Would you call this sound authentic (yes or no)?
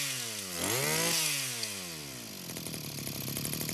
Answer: yes